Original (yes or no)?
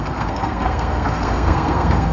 no